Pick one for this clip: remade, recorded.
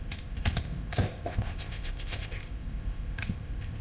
remade